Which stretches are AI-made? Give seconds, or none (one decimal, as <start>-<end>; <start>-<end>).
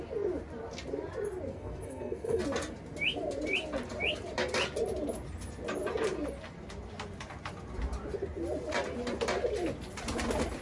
1.5-2.4